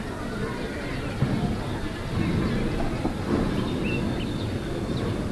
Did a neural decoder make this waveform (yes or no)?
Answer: no